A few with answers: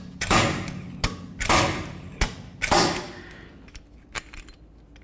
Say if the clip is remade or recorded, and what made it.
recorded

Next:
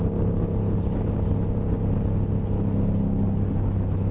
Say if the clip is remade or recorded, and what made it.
recorded